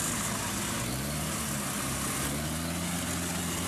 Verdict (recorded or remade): recorded